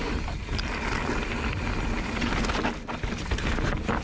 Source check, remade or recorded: recorded